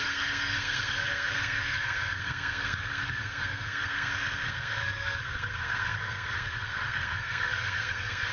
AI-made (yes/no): yes